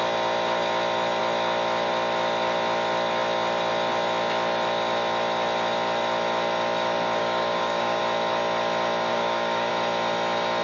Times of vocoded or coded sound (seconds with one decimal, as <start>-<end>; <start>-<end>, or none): 7.2-8.0; 9.1-9.7

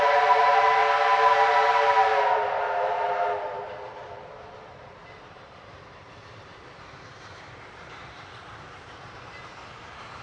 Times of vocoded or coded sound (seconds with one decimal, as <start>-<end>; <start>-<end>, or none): 0.0-0.8; 2.6-10.2